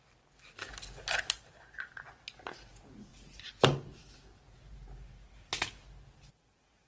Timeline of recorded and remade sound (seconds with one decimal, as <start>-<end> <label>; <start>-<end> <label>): 0.0-6.9 recorded